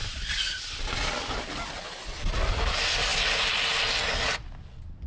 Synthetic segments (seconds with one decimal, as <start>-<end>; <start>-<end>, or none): none